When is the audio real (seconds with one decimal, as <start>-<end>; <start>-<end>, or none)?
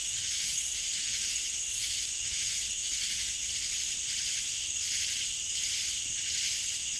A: 3.5-7.0